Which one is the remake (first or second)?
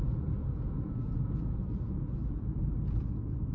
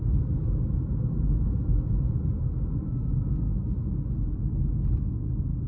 first